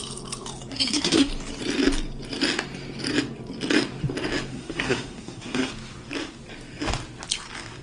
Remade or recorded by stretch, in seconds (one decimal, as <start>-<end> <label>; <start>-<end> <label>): 0.0-0.7 recorded; 0.7-1.3 remade; 1.3-4.5 recorded; 4.5-5.7 remade; 5.7-7.8 recorded